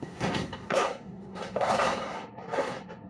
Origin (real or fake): fake